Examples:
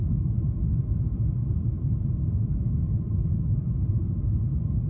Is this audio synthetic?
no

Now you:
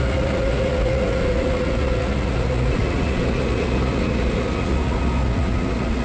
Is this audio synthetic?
yes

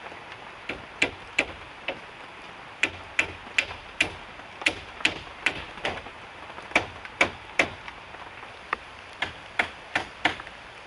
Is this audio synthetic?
yes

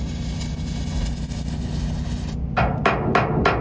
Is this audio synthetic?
no